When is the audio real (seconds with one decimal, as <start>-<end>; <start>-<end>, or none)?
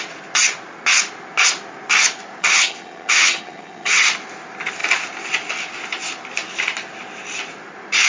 0.0-2.4; 4.0-8.1